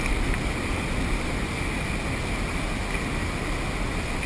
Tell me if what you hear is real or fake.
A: real